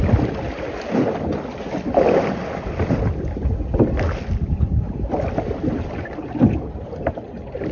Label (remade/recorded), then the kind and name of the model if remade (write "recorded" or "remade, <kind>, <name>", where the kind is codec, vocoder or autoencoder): recorded